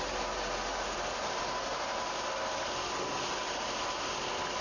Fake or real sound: real